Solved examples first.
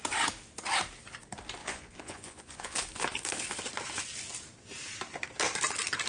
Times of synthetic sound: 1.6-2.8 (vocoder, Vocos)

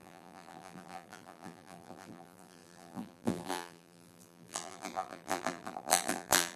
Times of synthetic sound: 0.0-6.6 (vocoder, BigVGAN v2)

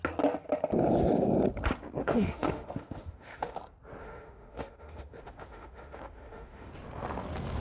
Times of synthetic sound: 2.0-3.6 (autoencoder, DAC-VAE); 4.0-6.7

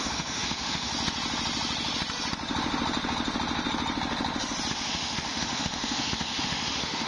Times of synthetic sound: 0.0-0.9 (autoencoder, DAC-VAE); 4.7-7.1

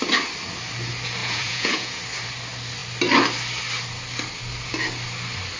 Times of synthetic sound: 1.2-2.0 (vocoder, Vocos)

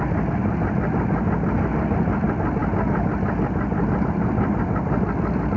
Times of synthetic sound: none